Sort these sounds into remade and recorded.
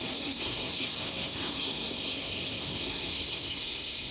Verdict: remade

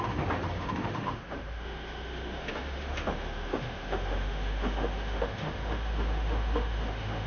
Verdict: remade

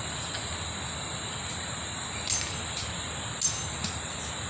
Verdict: recorded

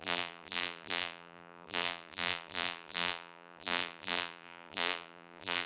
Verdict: remade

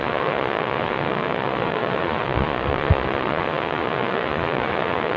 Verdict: remade